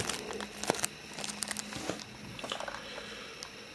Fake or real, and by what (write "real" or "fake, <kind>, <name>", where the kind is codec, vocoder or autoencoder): real